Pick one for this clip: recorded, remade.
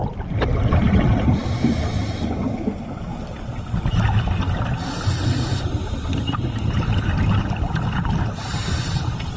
recorded